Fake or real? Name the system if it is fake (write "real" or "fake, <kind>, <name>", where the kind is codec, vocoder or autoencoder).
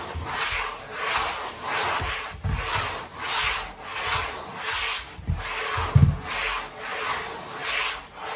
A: real